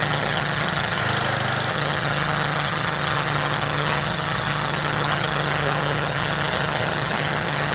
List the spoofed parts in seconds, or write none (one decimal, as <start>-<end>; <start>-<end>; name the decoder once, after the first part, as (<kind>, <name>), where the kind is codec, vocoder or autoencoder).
0.0-1.0 (vocoder, HiFi-GAN); 1.7-7.7